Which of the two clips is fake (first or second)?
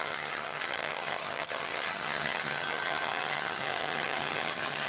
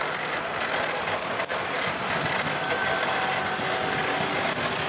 first